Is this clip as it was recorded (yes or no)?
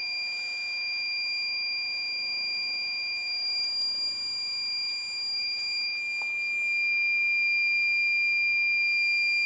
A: yes